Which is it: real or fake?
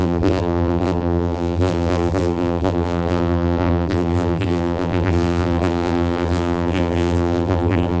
fake